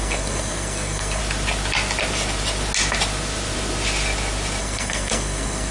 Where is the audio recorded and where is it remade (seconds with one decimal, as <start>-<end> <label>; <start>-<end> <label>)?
0.0-1.2 remade; 1.2-4.6 recorded; 4.6-5.7 remade